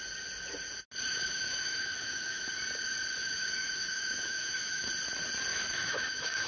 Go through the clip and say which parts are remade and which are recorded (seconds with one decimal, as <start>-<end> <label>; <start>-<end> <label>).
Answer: 0.0-1.1 recorded; 1.1-2.5 remade; 2.5-3.2 recorded; 3.2-4.9 remade; 4.9-5.5 recorded; 5.5-6.5 remade